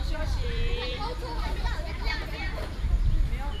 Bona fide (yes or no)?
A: no